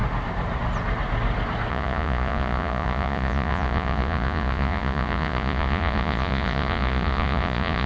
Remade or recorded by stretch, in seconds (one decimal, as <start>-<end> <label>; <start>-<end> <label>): 0.0-1.7 recorded; 1.7-7.9 remade